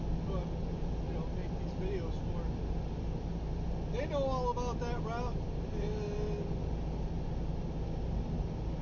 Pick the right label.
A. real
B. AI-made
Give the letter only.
A